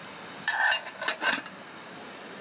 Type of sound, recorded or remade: recorded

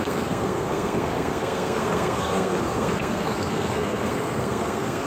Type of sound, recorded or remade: remade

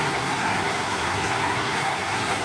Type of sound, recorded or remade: remade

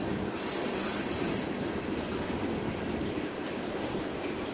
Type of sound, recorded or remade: recorded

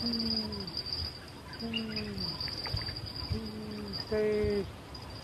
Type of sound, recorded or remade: recorded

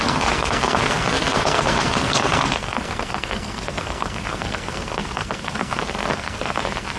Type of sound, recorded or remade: remade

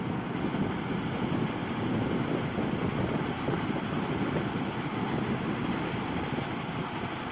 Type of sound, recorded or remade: recorded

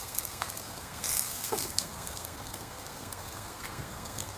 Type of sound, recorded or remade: remade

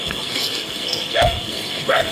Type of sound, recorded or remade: remade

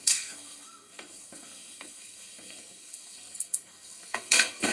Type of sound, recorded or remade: remade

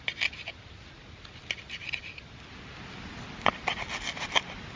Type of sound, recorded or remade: recorded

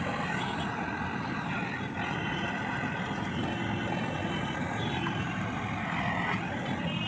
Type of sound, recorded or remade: recorded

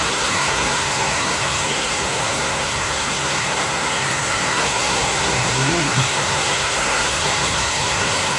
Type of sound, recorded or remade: remade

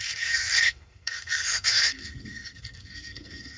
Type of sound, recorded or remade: remade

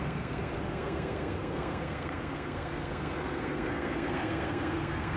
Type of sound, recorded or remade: remade